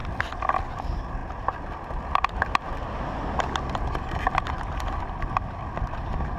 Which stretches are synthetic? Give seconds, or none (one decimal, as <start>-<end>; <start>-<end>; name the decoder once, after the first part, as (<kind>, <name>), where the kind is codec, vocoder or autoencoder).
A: none